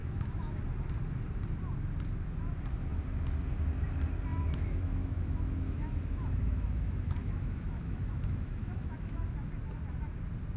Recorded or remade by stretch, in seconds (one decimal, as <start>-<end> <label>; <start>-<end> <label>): 0.0-0.6 remade; 0.6-4.3 recorded; 4.3-9.3 remade; 9.3-10.6 recorded